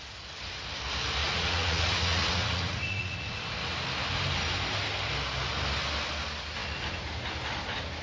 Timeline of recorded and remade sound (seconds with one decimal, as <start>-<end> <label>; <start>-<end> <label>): 0.0-1.2 recorded; 1.2-3.4 remade; 3.4-8.0 recorded